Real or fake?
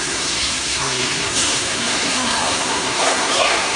fake